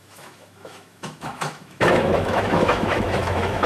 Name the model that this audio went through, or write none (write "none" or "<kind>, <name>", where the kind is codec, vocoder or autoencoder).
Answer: autoencoder, DAC-VAE